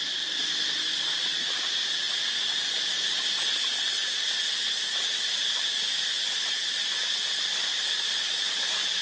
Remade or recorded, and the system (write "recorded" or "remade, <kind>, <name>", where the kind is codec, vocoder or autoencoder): recorded